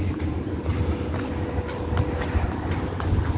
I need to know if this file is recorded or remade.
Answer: recorded